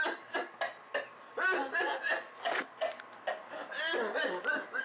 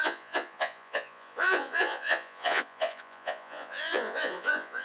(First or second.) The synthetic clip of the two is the second